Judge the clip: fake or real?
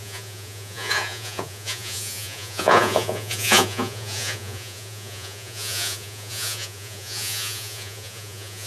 fake